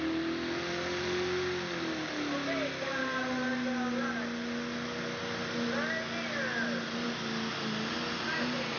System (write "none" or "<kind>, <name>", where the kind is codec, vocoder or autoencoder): none